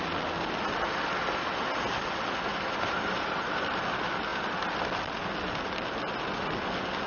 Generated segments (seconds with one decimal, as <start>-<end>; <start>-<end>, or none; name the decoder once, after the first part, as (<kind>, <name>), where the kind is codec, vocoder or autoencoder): 2.5-3.6 (vocoder, BigVGAN v2)